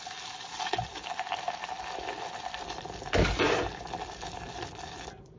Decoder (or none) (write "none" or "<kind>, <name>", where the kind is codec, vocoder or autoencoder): none